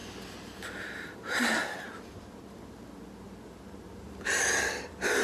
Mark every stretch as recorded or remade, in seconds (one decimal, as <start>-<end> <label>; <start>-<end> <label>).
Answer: 0.0-0.8 recorded; 0.8-1.6 remade; 1.6-4.0 recorded; 4.0-5.2 remade